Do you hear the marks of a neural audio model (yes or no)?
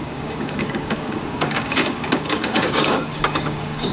yes